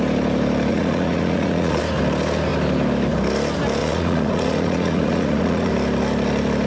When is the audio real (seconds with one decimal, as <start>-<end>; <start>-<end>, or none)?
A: 0.0-0.7; 1.8-3.8; 5.7-6.7

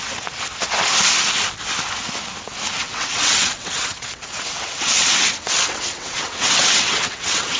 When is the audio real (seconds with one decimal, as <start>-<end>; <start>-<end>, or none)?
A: 0.0-2.8